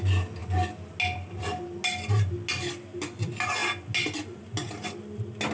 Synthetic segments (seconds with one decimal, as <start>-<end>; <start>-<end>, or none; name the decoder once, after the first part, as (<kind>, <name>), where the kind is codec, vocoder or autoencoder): none